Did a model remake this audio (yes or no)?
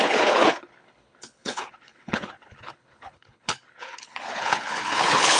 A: yes